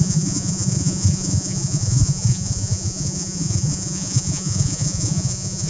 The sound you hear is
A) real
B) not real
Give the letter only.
B